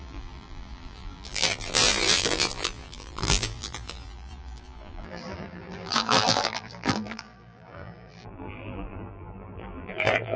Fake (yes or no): yes